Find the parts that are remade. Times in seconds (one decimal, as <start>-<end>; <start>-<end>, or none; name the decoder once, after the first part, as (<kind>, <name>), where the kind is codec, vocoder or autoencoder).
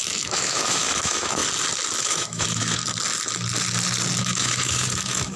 0.0-1.4 (autoencoder, DAC-VAE); 2.0-2.8; 4.2-5.4